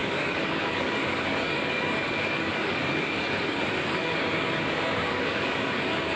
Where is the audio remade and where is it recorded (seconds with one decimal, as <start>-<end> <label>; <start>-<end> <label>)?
0.0-6.2 remade